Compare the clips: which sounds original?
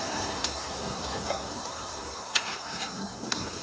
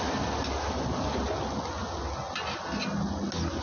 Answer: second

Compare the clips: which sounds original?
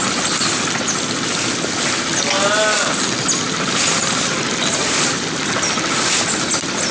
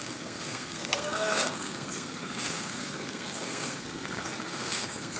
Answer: first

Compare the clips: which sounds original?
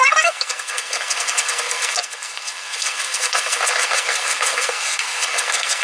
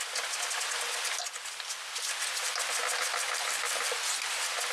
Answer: second